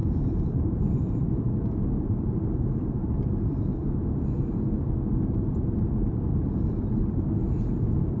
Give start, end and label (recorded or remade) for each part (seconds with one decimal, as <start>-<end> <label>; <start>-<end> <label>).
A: 0.0-3.7 remade; 3.7-6.1 recorded; 6.1-8.2 remade